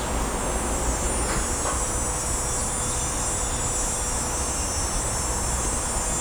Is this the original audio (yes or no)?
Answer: yes